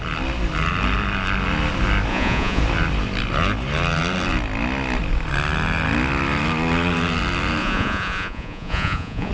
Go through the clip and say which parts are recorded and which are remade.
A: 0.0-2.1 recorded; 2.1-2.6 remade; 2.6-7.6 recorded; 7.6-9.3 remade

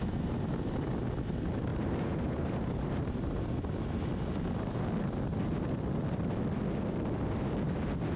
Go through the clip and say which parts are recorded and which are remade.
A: 0.0-1.7 recorded; 1.7-3.3 remade; 3.3-8.2 recorded

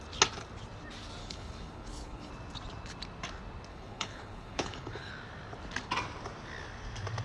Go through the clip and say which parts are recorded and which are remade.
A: 0.0-1.2 recorded; 1.2-2.3 remade; 2.3-3.7 recorded; 3.7-5.1 remade; 5.1-7.2 recorded